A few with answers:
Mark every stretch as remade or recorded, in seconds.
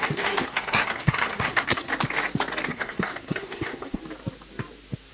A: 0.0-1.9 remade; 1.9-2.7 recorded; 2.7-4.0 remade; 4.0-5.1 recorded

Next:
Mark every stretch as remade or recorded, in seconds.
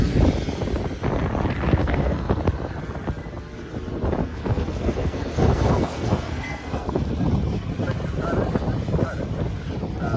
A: 0.0-1.8 recorded; 1.8-2.4 remade; 2.4-4.2 recorded; 4.2-7.0 remade; 7.0-10.2 recorded